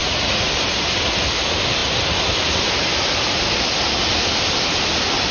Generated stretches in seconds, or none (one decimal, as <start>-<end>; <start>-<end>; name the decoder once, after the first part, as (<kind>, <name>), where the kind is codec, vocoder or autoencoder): 0.0-0.5 (vocoder, Vocos)